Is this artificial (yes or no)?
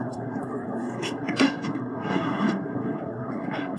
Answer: yes